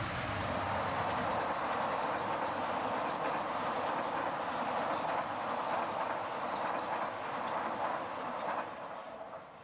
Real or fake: real